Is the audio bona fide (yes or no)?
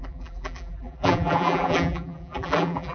no